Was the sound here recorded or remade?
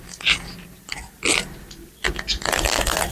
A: recorded